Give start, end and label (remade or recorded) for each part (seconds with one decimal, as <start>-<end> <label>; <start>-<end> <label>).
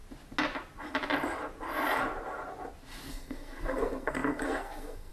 0.0-3.1 recorded; 3.1-5.1 remade